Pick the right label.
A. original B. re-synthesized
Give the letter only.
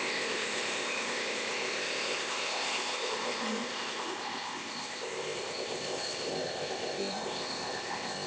B